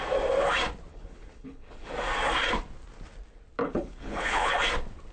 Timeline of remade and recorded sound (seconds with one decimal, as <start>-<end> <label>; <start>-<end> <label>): 0.0-0.9 recorded; 0.9-1.9 remade; 1.9-3.6 recorded; 3.6-4.5 remade; 4.5-5.1 recorded

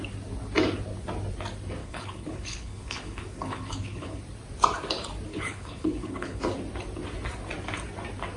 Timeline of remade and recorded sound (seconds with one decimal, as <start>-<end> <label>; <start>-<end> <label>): 0.0-1.8 recorded; 1.8-4.2 remade; 4.2-5.3 recorded; 5.3-6.4 remade; 6.4-8.4 recorded

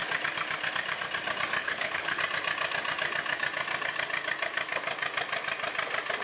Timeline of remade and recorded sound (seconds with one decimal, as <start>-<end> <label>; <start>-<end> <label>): 0.0-1.6 recorded; 1.6-2.2 remade; 2.2-6.2 recorded

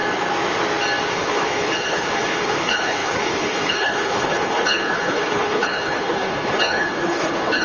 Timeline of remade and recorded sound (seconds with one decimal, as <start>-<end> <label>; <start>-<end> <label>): 0.0-1.1 recorded; 1.1-7.6 remade